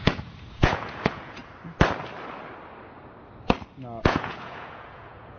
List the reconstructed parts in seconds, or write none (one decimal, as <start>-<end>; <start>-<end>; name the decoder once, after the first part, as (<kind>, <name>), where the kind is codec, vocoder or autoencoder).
0.0-1.4 (vocoder, Vocos); 4.0-5.4